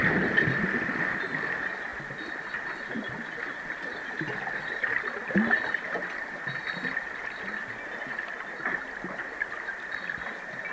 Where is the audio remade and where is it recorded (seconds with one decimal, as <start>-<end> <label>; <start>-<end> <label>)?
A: 0.0-10.7 recorded